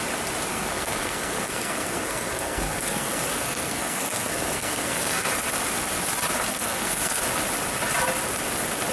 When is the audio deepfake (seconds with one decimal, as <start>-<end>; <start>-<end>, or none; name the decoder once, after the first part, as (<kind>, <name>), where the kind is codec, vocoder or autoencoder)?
0.5-5.3 (codec, SNAC); 6.5-7.2